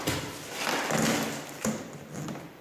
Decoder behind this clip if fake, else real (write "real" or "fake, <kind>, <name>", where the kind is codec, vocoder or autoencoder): real